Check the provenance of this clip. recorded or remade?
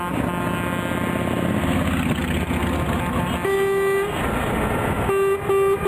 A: recorded